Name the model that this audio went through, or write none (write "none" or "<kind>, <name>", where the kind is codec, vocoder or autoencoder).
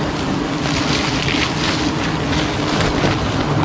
none